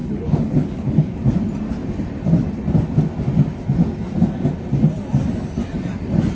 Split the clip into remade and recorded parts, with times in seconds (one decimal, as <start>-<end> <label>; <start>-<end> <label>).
0.0-1.1 remade; 1.1-6.3 recorded